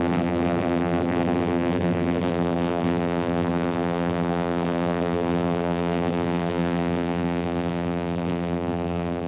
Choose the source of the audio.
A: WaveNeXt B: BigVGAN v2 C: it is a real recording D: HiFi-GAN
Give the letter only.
B